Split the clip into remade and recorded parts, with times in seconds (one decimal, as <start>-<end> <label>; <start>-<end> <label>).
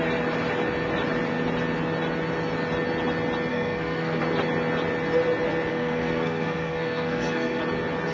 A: 0.0-3.5 recorded; 3.5-4.2 remade; 4.2-5.7 recorded; 5.7-7.6 remade; 7.6-8.1 recorded